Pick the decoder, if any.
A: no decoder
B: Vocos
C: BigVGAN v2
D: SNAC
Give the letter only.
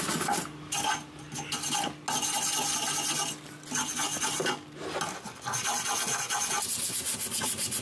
A